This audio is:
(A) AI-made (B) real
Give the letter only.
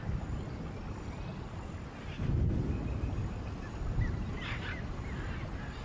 B